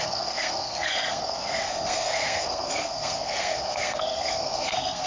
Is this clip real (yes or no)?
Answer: no